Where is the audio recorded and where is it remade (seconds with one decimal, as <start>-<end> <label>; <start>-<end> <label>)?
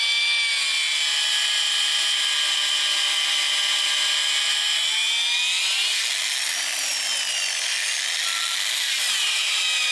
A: 0.0-9.9 recorded